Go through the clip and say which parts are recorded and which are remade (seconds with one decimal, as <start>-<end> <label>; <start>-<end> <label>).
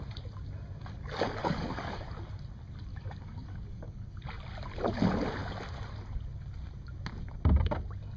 0.0-0.8 recorded; 0.8-2.1 remade; 2.1-2.9 recorded; 2.9-4.3 remade; 4.3-8.2 recorded